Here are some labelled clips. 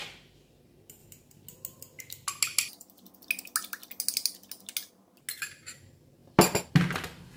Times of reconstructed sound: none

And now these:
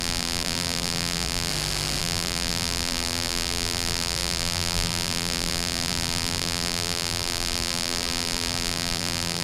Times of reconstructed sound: 0.0-1.5; 2.0-9.4

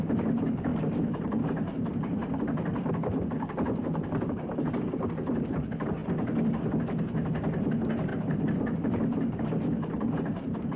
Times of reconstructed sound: 0.0-6.0; 6.8-10.8